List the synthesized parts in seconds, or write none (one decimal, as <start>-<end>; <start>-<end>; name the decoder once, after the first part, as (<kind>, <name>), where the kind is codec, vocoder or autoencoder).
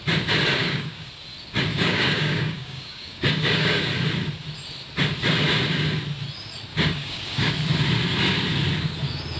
0.6-1.1 (codec, DAC); 1.7-3.8; 6.7-7.5